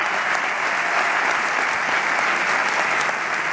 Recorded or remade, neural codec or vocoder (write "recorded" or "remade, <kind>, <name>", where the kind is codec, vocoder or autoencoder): recorded